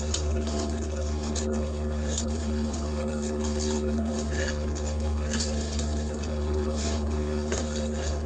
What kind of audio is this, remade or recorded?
remade